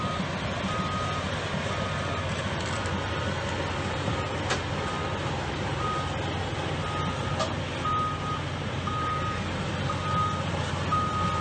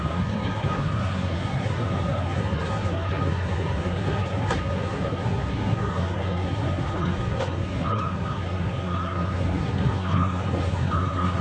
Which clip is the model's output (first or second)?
second